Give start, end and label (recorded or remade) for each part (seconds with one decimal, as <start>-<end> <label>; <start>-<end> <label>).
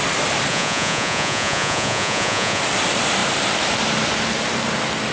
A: 0.0-0.5 recorded; 0.5-2.6 remade; 2.6-5.1 recorded